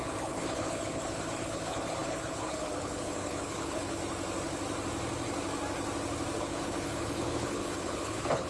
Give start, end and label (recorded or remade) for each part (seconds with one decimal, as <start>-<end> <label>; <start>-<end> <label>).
0.0-4.0 remade; 4.0-6.4 recorded; 6.4-8.5 remade